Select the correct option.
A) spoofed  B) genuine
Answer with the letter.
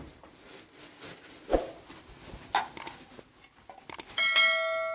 B